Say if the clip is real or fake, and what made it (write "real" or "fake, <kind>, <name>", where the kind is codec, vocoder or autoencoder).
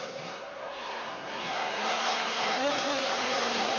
fake, codec, SNAC